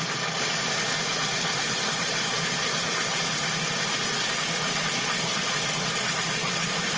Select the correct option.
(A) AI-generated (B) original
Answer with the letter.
B